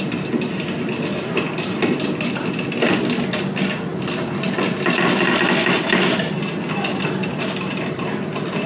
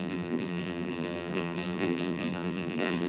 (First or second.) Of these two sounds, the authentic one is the first